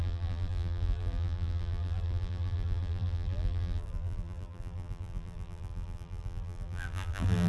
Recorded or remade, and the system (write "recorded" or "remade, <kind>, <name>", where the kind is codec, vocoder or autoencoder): remade, vocoder, BigVGAN v2